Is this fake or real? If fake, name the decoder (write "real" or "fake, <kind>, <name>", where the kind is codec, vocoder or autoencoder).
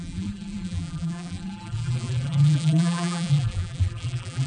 fake, vocoder, BigVGAN v2